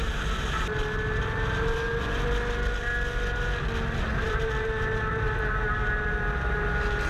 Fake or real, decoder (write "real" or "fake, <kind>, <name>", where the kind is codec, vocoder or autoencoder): real